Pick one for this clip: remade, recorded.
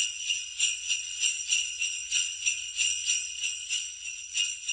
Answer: remade